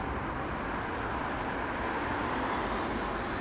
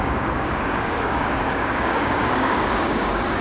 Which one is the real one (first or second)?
first